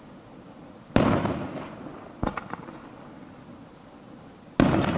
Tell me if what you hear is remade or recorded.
recorded